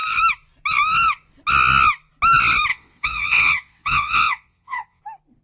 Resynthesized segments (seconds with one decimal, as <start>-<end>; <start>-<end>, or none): 2.7-5.0